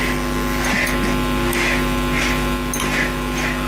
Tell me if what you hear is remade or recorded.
recorded